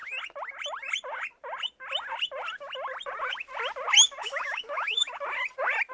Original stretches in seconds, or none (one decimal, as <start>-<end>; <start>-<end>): 0.0-4.2; 5.1-5.9